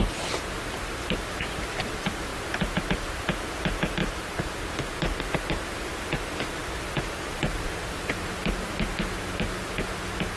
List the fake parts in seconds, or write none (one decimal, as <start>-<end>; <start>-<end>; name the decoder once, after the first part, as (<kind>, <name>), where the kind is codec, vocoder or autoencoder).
none